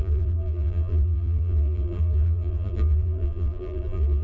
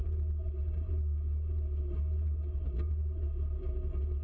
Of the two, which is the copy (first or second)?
first